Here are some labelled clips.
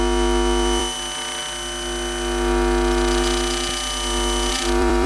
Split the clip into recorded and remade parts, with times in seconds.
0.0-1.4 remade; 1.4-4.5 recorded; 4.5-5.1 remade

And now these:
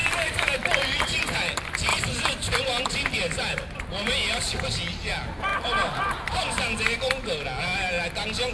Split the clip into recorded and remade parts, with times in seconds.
0.0-1.2 remade; 1.2-1.9 recorded; 1.9-3.8 remade; 3.8-5.5 recorded; 5.5-7.0 remade; 7.0-8.5 recorded

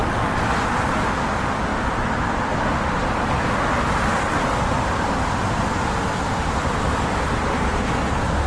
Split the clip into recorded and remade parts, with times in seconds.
0.0-1.7 recorded; 1.7-3.5 remade; 3.5-8.5 recorded